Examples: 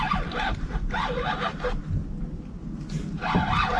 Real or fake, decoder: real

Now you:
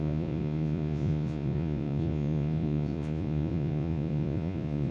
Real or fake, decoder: fake, vocoder, Vocos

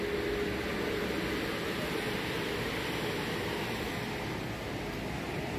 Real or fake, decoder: real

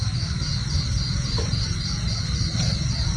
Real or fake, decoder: real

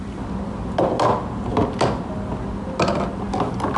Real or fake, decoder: real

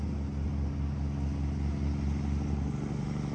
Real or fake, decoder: real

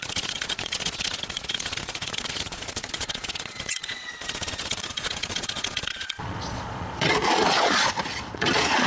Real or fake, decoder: fake, vocoder, Vocos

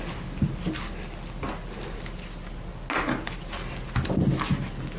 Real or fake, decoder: real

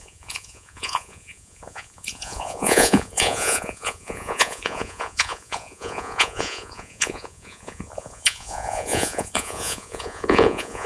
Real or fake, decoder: fake, vocoder, Vocos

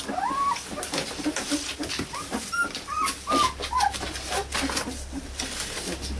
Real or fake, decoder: real